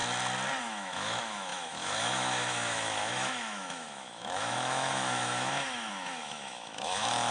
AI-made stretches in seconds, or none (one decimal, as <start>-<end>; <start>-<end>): 0.6-7.3